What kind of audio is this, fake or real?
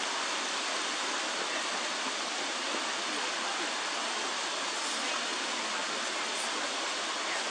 real